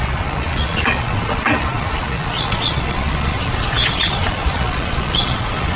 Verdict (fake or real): fake